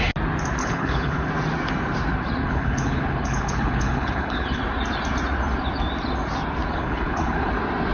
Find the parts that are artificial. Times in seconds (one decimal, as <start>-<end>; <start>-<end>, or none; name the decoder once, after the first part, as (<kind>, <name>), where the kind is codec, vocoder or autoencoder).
0.6-1.3 (codec, HILCodec); 2.4-4.6; 6.7-7.5